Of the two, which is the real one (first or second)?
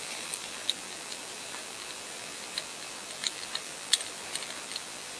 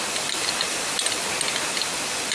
second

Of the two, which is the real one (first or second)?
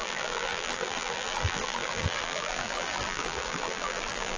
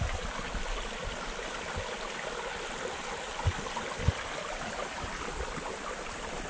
second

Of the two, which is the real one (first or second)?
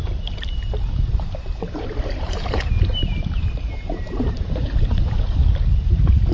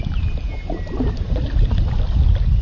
second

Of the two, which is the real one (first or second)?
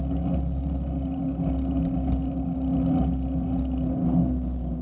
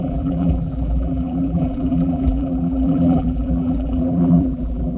first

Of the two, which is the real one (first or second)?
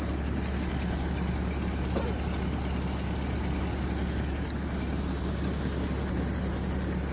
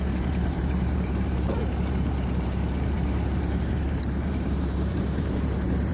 first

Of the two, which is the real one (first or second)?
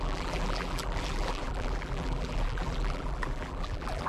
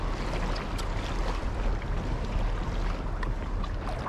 second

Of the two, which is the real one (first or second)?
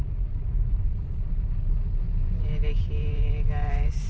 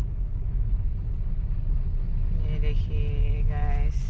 second